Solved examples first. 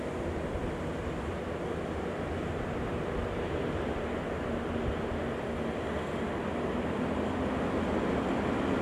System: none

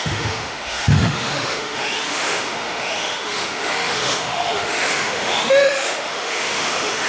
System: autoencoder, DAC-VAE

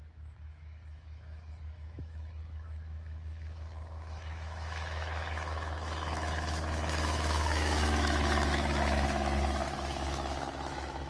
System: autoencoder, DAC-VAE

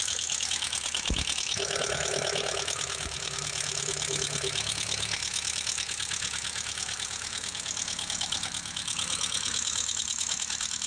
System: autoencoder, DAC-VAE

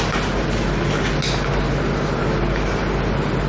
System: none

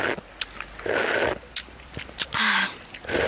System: none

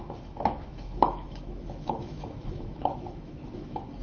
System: autoencoder, DAC-VAE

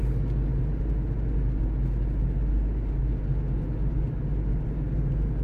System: none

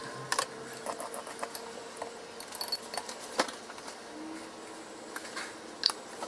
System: none